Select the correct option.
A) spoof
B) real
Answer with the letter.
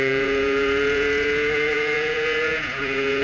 A